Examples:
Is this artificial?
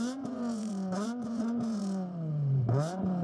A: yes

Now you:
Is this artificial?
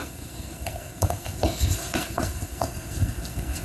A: yes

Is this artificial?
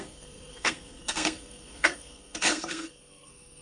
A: yes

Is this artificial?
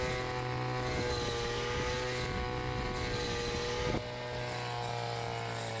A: no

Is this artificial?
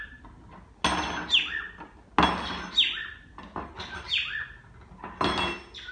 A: no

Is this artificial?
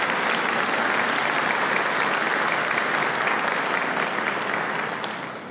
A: no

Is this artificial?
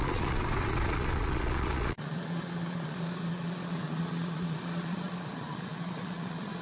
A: yes